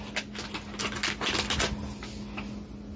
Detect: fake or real real